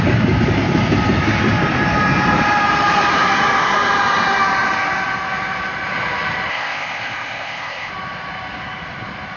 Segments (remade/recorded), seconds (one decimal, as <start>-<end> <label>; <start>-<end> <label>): 0.0-6.5 recorded; 6.5-7.9 remade; 7.9-9.4 recorded